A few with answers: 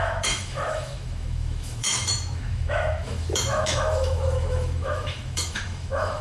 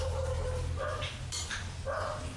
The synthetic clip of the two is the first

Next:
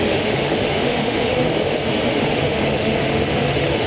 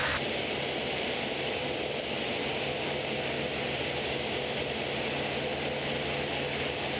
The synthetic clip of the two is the first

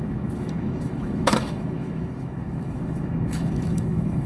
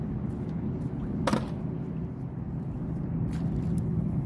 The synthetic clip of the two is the first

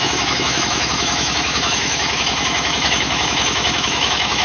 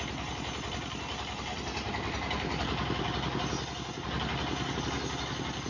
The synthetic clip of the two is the first